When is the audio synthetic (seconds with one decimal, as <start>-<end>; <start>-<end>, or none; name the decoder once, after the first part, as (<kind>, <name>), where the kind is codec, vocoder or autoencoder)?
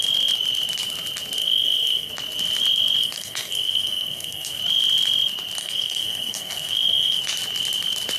1.4-2.1 (codec, SNAC); 3.0-4.6; 5.6-7.2